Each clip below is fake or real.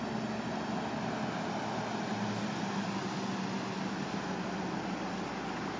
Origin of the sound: real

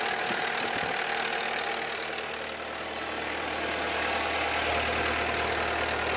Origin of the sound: real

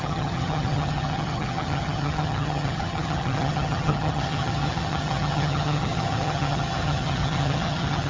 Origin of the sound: fake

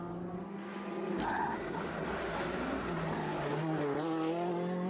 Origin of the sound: real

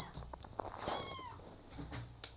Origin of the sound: real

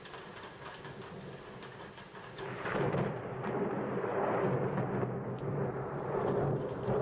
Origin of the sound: real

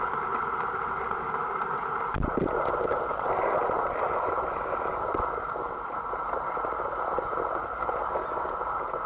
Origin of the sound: real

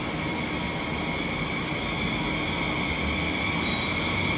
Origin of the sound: real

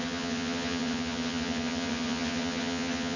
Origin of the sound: fake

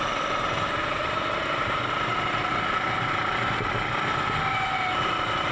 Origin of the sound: real